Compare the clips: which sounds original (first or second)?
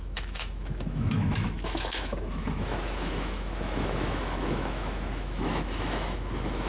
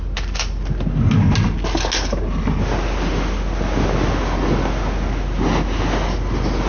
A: second